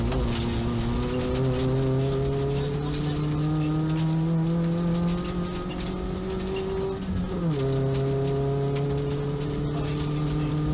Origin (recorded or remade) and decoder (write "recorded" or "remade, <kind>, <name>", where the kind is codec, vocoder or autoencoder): recorded